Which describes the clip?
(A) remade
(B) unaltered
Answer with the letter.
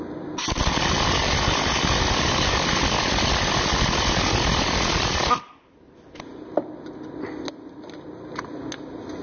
B